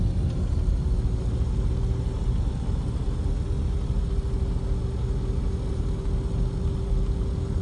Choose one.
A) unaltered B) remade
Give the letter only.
A